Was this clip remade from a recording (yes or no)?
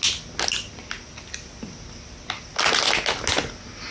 no